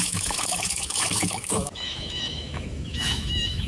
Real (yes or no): no